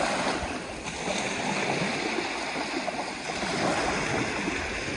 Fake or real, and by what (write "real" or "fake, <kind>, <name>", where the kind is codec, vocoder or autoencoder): real